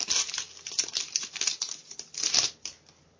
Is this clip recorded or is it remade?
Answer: recorded